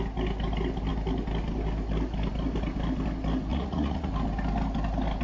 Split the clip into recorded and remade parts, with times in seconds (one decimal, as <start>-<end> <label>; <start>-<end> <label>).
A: 0.0-3.5 recorded; 3.5-4.1 remade; 4.1-5.2 recorded